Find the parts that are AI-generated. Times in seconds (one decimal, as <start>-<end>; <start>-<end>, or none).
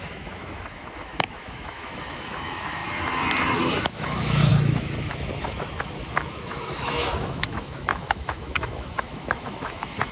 0.0-2.8; 3.8-10.1